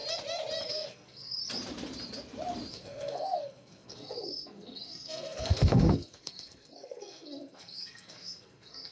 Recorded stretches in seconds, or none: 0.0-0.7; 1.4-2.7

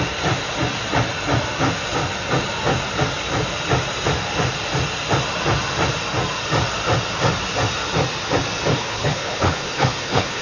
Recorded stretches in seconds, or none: 0.0-8.7